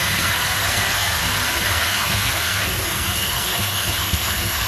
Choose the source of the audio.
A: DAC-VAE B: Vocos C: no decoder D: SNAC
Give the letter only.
D